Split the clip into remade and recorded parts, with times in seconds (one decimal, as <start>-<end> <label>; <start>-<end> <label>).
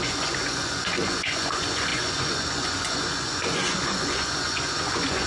0.0-5.3 remade